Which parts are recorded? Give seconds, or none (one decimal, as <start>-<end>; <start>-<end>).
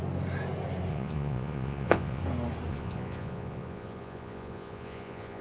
0.0-0.9; 2.2-2.7